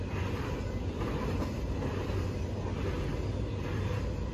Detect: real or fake real